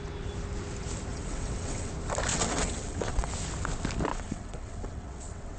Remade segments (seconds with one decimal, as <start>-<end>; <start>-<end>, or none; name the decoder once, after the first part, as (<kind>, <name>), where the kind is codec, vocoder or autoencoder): 1.1-1.9 (vocoder, WaveNeXt); 2.3-3.3; 4.1-5.6